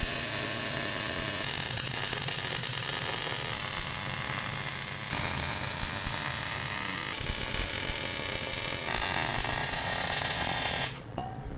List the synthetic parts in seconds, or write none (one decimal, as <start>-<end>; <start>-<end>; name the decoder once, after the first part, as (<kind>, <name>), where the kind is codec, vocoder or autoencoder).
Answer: 9.6-11.6 (vocoder, Vocos)